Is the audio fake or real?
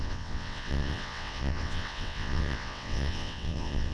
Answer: fake